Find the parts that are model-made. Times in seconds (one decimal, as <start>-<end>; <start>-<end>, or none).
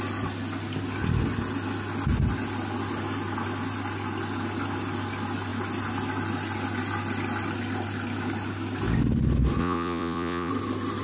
9.6-10.5